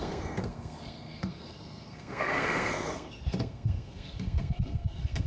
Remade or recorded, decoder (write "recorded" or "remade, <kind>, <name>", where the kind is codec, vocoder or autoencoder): remade, codec, SNAC